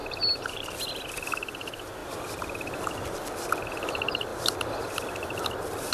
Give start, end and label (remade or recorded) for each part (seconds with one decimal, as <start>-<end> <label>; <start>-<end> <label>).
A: 0.0-0.9 remade; 0.9-2.0 recorded; 2.0-2.8 remade; 2.8-4.3 recorded; 4.3-4.8 remade; 4.8-5.9 recorded